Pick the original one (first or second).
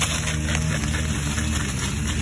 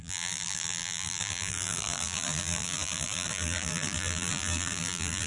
first